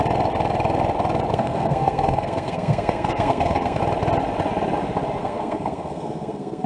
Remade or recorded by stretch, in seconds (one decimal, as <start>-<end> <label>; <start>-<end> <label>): 0.0-1.3 recorded; 1.3-3.8 remade; 3.8-5.2 recorded; 5.2-6.7 remade